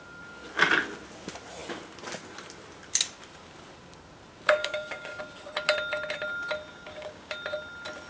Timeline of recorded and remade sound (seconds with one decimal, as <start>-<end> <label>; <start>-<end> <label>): 0.0-4.6 recorded; 4.6-5.2 remade; 5.2-6.7 recorded; 6.7-7.3 remade; 7.3-8.1 recorded